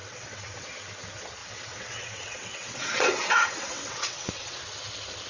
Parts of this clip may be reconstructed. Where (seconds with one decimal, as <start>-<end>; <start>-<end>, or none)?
0.0-0.7; 1.4-4.6